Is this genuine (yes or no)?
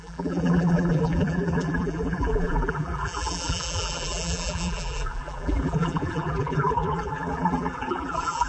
no